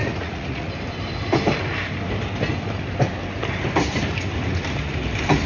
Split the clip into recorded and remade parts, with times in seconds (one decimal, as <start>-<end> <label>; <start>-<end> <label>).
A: 0.0-0.7 remade; 0.7-5.5 recorded